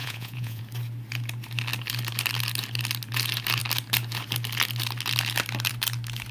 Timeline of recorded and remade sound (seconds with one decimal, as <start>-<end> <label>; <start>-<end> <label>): 0.0-0.6 remade; 0.6-6.3 recorded